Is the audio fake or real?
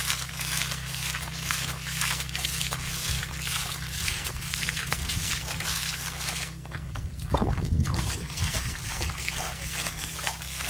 fake